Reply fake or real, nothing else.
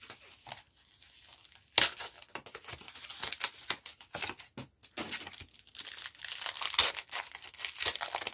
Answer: real